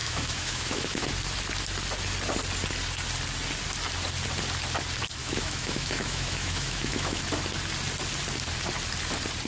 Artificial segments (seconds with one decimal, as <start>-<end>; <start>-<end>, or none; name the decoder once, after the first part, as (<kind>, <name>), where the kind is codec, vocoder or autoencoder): 0.0-1.1 (autoencoder, DAC-VAE); 5.2-7.2